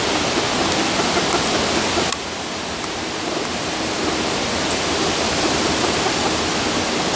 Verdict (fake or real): real